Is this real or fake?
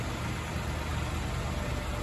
real